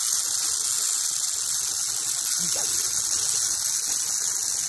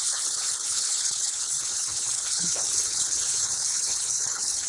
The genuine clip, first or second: first